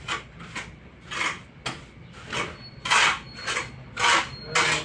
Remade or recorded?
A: recorded